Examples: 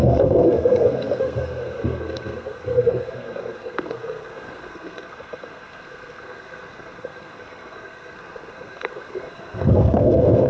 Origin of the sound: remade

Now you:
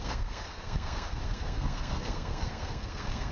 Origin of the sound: remade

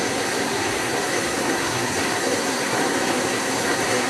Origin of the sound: remade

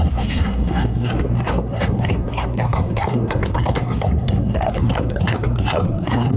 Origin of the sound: remade